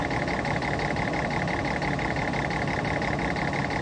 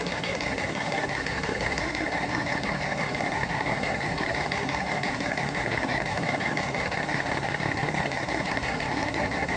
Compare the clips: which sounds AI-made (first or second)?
second